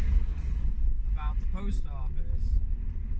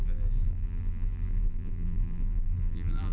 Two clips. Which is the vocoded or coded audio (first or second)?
second